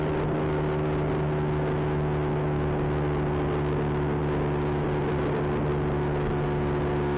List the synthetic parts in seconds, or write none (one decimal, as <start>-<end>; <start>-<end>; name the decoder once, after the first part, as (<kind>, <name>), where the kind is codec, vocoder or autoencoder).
none

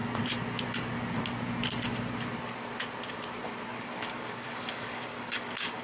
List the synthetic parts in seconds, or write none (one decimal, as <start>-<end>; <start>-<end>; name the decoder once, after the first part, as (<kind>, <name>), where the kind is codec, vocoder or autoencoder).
3.7-5.8 (codec, DAC)

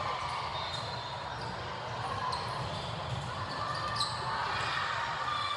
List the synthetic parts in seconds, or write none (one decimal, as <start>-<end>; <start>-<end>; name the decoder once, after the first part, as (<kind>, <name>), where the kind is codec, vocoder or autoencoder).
none

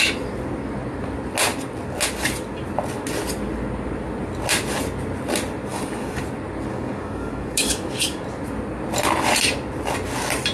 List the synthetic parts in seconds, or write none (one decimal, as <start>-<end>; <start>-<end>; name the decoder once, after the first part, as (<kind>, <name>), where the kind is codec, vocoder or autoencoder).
5.7-6.2 (codec, DAC); 6.7-8.2

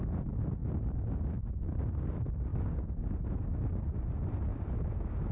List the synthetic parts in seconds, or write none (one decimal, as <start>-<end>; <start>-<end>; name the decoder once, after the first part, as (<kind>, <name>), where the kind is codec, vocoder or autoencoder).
2.5-3.1 (codec, DAC)

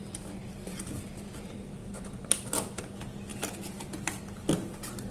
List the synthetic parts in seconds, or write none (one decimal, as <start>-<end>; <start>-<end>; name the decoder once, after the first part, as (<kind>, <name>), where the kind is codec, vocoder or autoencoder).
none

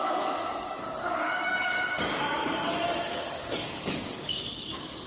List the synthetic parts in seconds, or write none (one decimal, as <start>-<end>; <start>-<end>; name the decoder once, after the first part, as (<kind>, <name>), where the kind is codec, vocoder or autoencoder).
0.0-2.4 (codec, DAC); 3.0-5.1

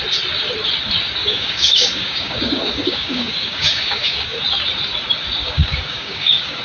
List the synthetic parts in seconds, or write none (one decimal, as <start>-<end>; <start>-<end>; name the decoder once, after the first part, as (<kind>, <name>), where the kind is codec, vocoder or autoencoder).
1.2-4.4 (codec, DAC); 5.4-6.6